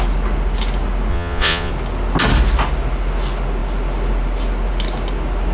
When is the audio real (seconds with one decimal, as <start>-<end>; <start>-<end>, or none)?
0.0-1.1; 1.7-5.5